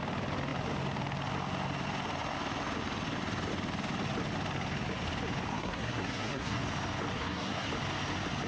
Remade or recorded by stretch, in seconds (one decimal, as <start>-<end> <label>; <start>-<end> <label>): 0.0-5.5 recorded; 5.5-6.6 remade; 6.6-7.1 recorded; 7.1-7.7 remade; 7.7-8.5 recorded